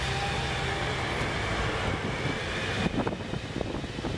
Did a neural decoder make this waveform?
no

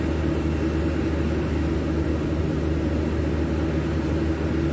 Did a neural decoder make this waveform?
no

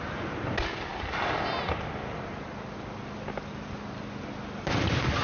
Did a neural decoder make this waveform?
no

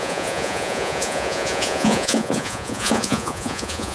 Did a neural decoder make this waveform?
yes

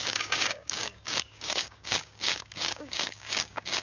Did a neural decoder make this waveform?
yes